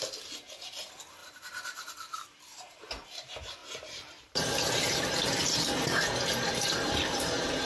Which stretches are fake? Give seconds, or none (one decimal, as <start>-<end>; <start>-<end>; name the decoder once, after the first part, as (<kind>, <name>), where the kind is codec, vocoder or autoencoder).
1.2-2.8 (vocoder, BigVGAN v2); 3.6-5.0